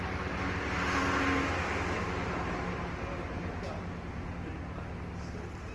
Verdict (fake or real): real